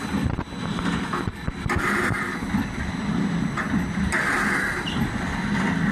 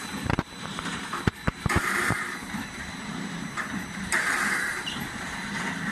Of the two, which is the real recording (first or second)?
first